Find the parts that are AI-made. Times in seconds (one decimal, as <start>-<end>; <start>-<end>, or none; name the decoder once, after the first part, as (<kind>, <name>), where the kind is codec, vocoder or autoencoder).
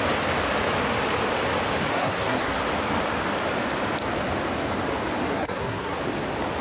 1.9-2.5 (codec, SNAC); 5.3-6.0